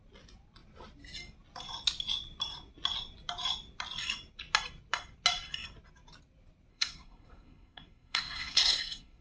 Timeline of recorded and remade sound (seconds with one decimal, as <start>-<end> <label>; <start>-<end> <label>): 0.0-6.7 recorded; 6.7-9.2 remade